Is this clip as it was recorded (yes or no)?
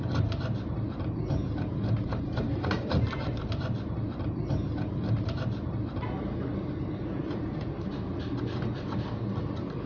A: no